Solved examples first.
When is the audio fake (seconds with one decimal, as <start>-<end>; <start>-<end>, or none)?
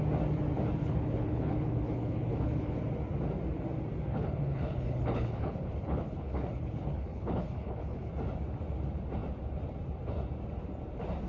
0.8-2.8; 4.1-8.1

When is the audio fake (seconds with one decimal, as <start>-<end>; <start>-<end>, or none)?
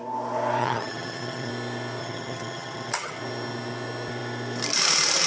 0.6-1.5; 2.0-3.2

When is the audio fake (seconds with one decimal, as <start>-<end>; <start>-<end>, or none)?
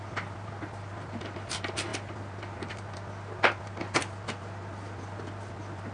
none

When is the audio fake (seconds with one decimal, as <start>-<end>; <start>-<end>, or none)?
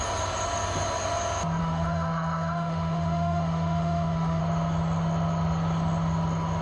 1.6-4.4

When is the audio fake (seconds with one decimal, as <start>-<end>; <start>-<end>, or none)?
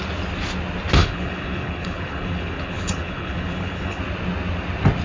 1.0-4.0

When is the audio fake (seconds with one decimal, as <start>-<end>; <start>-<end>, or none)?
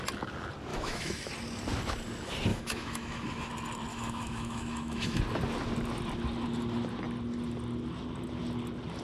0.7-1.3; 2.5-3.5; 3.9-5.2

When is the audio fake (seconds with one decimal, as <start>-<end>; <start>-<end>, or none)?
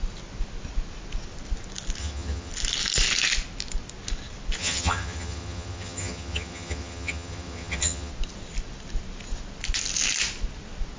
2.0-2.5; 4.6-8.1